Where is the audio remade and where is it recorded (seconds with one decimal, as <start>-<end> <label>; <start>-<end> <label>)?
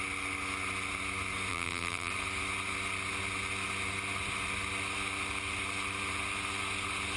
0.0-1.5 recorded; 1.5-2.1 remade; 2.1-7.2 recorded